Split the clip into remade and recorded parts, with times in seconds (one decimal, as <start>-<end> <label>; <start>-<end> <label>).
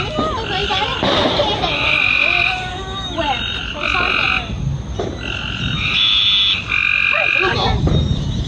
0.0-8.5 recorded